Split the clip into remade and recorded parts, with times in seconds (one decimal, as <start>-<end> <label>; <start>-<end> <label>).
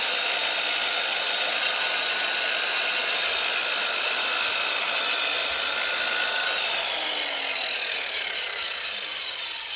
0.0-9.8 recorded